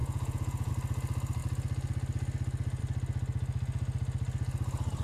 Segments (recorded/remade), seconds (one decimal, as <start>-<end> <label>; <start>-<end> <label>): 0.0-0.7 remade; 0.7-5.0 recorded